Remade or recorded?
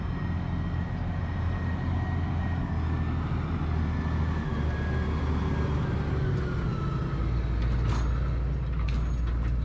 recorded